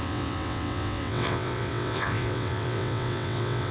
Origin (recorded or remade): remade